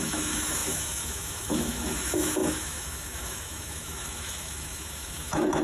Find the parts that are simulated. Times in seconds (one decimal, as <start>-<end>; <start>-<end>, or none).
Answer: 0.0-5.6